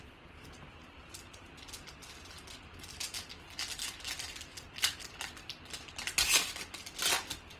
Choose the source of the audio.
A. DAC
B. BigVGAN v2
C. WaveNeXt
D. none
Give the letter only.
D